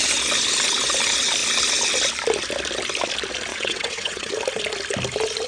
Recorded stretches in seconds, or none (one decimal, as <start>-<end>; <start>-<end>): 0.0-3.5; 4.3-5.5